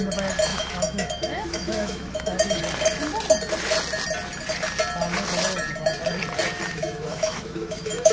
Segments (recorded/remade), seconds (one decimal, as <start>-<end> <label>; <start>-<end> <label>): 0.0-0.5 recorded; 0.5-2.6 remade; 2.6-6.7 recorded; 6.7-8.1 remade